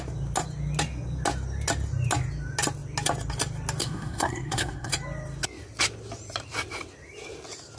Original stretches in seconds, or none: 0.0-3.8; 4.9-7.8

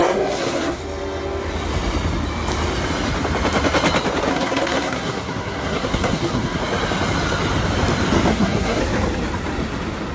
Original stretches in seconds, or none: 0.8-4.3; 6.6-8.3; 8.8-10.1

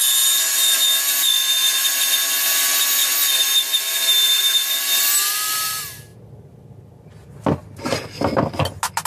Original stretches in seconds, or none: 0.0-9.1

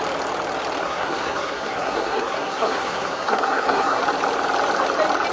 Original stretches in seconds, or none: 0.0-0.8; 4.0-5.3

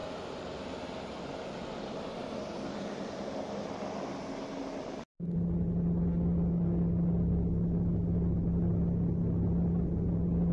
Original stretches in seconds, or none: 0.0-10.5